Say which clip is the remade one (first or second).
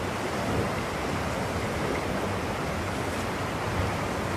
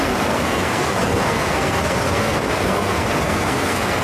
second